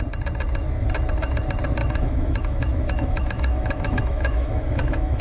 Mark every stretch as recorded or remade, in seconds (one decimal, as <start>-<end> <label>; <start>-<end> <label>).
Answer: 0.0-1.8 recorded; 1.8-5.2 remade